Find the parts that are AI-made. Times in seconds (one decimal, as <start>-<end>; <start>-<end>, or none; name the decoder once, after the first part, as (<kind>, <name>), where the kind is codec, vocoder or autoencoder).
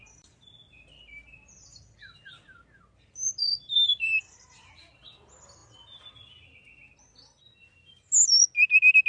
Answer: 0.0-4.9 (vocoder, BigVGAN v2)